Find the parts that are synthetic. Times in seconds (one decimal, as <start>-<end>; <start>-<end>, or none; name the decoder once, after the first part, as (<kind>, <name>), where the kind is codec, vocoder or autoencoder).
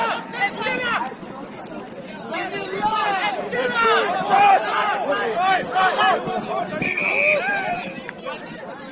none